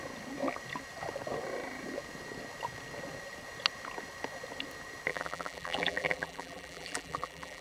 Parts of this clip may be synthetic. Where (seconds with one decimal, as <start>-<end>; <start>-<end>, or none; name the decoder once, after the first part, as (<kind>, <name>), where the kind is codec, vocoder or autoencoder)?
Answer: 5.1-7.6 (vocoder, BigVGAN v2)